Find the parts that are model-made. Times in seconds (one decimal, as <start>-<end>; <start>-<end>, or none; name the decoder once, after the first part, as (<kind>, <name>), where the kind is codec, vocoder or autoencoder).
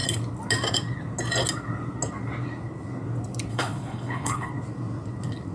3.5-4.5 (codec, HILCodec)